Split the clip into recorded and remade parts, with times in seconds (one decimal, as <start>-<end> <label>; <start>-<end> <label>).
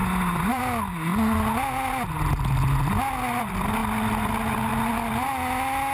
0.0-0.6 remade; 0.6-5.9 recorded